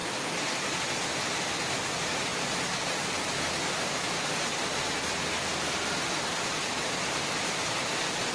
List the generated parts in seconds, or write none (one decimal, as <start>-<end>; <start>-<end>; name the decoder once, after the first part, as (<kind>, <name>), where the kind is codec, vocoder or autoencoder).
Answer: none